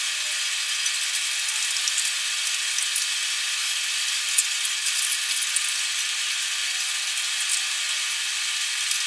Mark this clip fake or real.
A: real